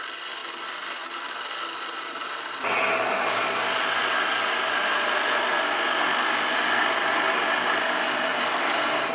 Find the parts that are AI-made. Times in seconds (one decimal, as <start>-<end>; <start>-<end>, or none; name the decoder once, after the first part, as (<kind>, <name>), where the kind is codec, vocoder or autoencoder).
none